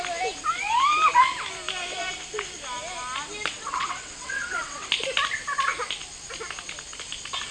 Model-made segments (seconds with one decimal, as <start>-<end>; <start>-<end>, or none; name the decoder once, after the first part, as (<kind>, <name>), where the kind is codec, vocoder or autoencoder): 3.5-4.9 (vocoder, WaveNeXt)